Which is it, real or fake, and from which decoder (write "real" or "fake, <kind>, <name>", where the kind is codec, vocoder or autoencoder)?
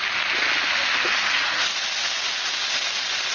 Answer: real